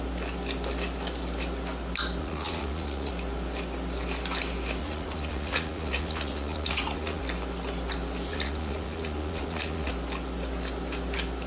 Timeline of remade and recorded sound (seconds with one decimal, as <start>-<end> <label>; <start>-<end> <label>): 0.0-2.2 recorded; 2.2-3.1 remade; 3.1-4.8 recorded; 4.8-7.2 remade; 7.2-8.3 recorded; 8.3-9.9 remade; 9.9-11.5 recorded